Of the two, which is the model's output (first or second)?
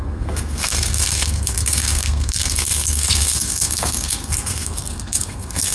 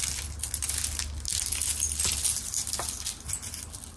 first